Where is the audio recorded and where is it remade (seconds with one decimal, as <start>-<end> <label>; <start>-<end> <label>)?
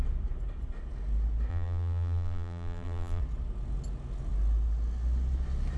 0.0-1.5 recorded; 1.5-3.2 remade; 3.2-5.8 recorded